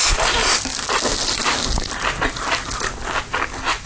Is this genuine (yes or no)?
yes